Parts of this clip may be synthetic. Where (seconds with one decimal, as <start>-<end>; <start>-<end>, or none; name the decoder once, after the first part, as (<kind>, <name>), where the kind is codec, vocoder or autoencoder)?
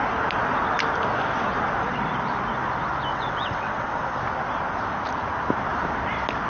3.1-4.2 (vocoder, WaveNeXt)